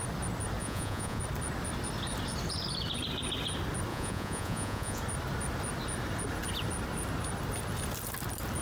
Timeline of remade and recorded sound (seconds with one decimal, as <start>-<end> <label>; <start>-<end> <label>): 0.0-0.6 recorded; 0.6-1.2 remade; 1.2-3.9 recorded; 3.9-5.0 remade; 5.0-8.6 recorded